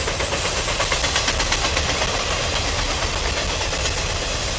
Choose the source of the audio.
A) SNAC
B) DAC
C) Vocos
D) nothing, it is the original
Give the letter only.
D